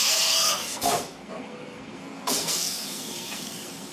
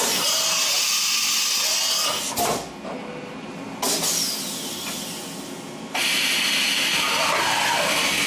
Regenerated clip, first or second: first